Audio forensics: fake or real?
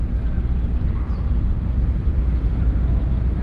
real